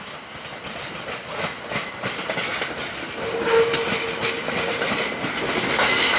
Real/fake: real